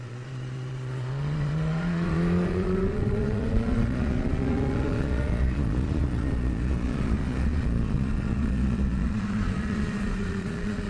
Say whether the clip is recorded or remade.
remade